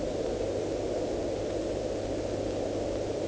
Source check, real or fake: real